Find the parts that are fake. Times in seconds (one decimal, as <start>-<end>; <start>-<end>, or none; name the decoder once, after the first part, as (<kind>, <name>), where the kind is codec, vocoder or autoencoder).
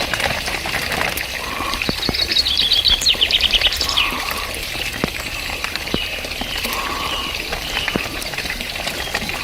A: 0.0-0.8 (vocoder, BigVGAN v2); 1.7-2.3; 3.1-9.4